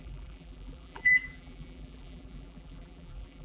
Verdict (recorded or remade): remade